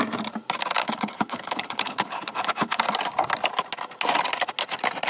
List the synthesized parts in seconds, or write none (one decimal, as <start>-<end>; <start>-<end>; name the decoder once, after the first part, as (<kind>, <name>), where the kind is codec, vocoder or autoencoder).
0.8-2.8 (codec, HILCodec)